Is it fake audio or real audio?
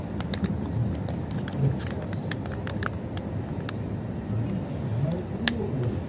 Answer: real